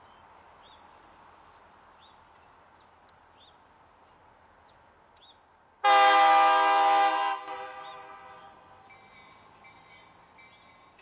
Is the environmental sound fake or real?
real